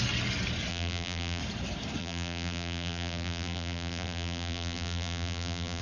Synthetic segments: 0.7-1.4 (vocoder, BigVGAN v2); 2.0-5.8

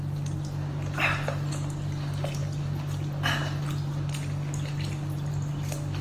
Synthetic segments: none